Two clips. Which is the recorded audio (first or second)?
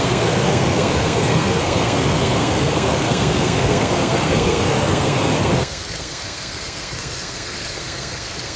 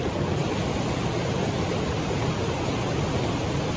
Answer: second